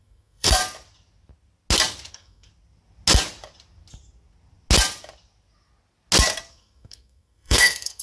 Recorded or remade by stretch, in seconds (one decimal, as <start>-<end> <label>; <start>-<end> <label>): 0.0-0.6 remade; 0.6-2.1 recorded; 2.1-2.5 remade; 2.5-6.5 recorded; 6.5-8.0 remade